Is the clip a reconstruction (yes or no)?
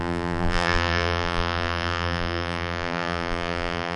yes